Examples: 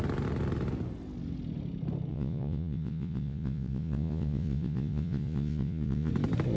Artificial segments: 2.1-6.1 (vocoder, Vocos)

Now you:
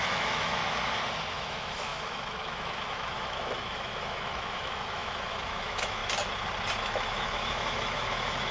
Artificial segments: 0.0-0.6 (autoencoder, DAC-VAE); 1.3-6.0; 6.8-8.5

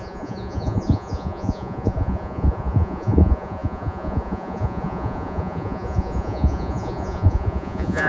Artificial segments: 0.0-8.1 (vocoder, Vocos)

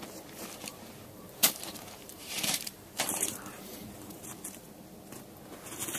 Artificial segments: 0.7-4.3 (vocoder, BigVGAN v2)

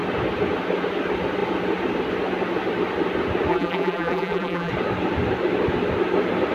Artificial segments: 3.5-4.7 (vocoder, BigVGAN v2)